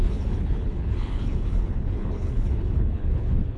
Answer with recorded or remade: remade